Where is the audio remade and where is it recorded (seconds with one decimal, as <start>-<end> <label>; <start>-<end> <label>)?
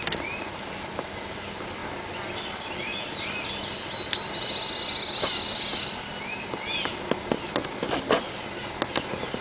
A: 0.0-9.4 recorded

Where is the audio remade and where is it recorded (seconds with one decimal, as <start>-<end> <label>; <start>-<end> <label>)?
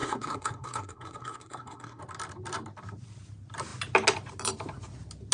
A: 0.0-2.0 remade; 2.0-5.3 recorded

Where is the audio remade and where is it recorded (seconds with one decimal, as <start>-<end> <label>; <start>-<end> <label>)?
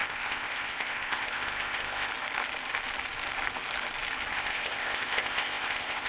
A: 0.0-2.1 remade; 2.1-4.3 recorded; 4.3-6.1 remade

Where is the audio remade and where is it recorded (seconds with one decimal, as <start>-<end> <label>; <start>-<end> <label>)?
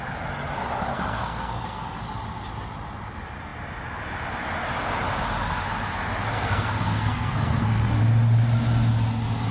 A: 0.0-0.9 recorded; 0.9-2.0 remade; 2.0-6.3 recorded; 6.3-8.0 remade; 8.0-9.5 recorded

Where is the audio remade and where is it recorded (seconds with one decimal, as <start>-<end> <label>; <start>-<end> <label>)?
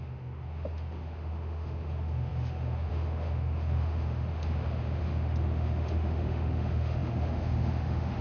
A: 0.0-8.2 remade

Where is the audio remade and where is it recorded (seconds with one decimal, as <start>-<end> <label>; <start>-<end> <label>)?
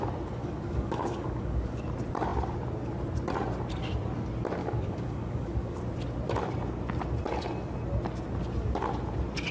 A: 0.0-0.4 recorded; 0.4-1.8 remade; 1.8-4.6 recorded; 4.6-5.8 remade; 5.8-9.5 recorded